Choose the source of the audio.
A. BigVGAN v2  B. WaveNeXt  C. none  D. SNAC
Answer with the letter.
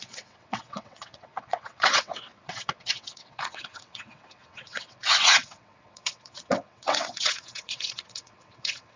B